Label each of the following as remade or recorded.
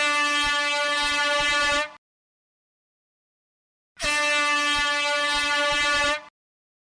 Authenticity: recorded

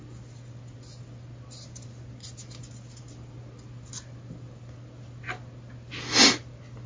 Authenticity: recorded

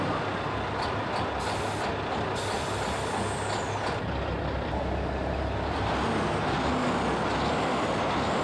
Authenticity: recorded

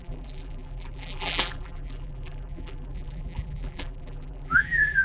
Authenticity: remade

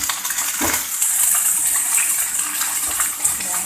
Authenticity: recorded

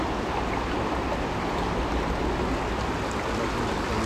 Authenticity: recorded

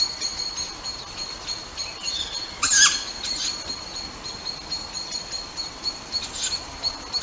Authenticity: recorded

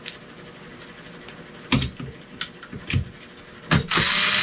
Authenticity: recorded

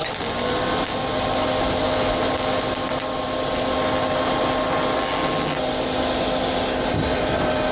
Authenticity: recorded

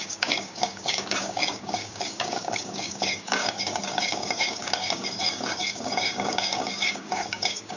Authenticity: remade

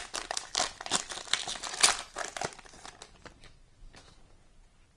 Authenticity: recorded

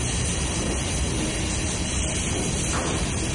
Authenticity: recorded